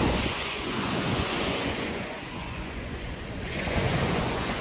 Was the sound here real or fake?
fake